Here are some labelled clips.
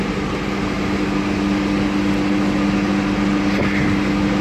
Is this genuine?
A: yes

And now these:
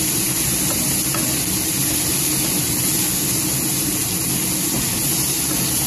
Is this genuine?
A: yes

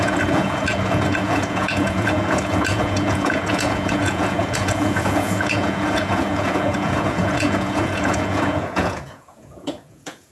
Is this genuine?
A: no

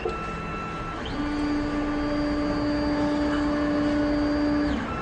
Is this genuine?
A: yes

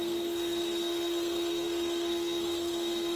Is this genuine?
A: no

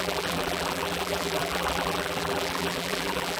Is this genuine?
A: no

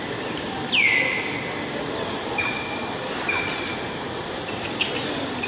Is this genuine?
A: yes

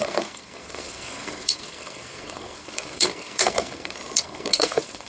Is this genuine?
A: no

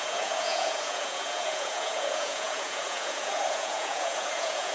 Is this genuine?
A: no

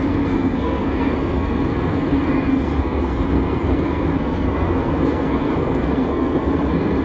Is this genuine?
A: no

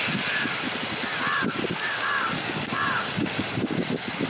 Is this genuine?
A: yes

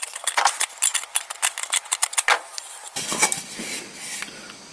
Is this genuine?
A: yes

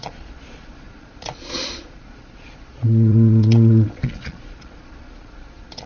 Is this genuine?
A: no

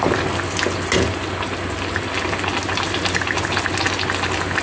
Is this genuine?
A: yes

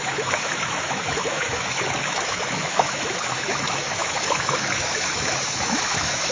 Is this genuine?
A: no